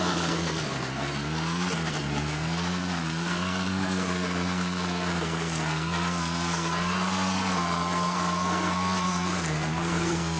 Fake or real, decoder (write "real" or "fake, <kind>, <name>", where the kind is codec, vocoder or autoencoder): fake, codec, SNAC